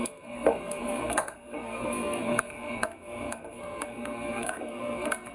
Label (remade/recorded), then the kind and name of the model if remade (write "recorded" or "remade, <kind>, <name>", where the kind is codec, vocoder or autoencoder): remade, codec, SNAC